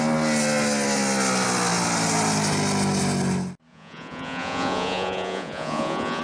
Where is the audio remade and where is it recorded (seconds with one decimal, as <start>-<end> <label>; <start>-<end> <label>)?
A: 0.0-3.7 recorded; 3.7-6.2 remade